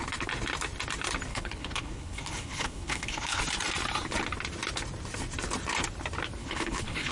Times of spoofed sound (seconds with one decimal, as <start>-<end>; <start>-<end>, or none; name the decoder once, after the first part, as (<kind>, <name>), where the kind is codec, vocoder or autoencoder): 1.3-3.4 (codec, HILCodec); 6.4-7.1